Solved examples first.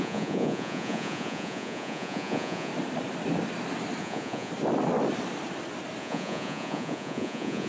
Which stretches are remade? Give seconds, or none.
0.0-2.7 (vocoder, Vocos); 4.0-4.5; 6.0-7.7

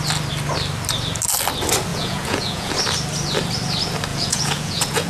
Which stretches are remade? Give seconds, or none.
1.9-2.7 (vocoder, Vocos); 4.1-5.1

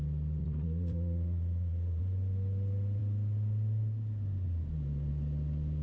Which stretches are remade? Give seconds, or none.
0.4-2.0 (vocoder, Vocos)

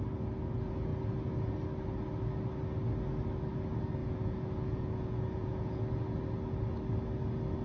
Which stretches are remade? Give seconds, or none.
4.0-5.8 (vocoder, Vocos)